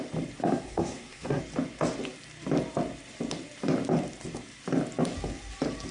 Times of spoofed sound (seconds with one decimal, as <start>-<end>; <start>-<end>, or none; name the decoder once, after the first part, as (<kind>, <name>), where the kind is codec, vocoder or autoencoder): 0.4-1.4 (codec, SNAC)

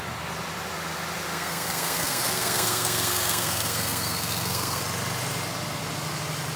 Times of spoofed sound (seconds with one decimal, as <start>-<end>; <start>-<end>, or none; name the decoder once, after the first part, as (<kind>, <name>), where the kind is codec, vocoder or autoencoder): 1.3-4.8 (codec, SNAC)

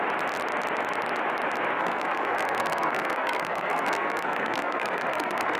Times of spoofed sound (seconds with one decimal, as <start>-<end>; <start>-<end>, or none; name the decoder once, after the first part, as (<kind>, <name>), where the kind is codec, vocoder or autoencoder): 1.8-5.6 (codec, SNAC)

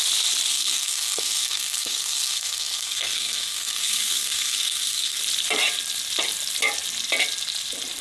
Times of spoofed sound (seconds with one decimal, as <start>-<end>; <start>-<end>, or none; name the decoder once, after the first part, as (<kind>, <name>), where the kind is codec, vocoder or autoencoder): 0.5-5.2 (codec, SNAC)

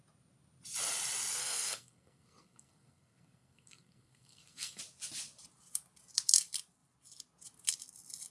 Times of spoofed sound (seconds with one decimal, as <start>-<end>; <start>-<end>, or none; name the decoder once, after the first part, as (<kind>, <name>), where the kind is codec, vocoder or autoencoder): 1.4-4.8 (codec, SNAC)